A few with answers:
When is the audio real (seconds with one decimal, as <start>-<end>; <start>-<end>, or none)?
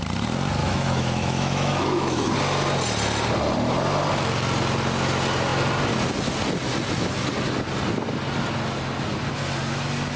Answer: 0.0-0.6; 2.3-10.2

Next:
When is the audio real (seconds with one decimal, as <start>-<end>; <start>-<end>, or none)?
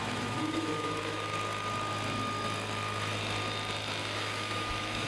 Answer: 1.3-4.0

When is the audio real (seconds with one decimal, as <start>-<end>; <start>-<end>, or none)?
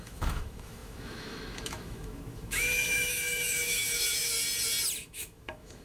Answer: 4.3-5.0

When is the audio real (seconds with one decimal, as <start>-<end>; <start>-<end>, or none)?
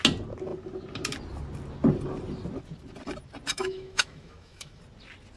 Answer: 0.0-3.5; 4.8-5.4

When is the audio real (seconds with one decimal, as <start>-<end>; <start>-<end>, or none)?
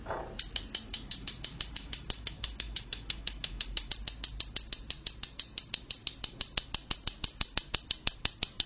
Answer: 0.0-0.9; 3.9-8.7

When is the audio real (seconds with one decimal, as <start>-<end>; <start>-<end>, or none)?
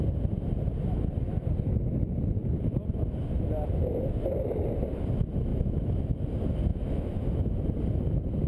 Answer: 0.0-5.5; 6.0-6.7; 7.6-8.5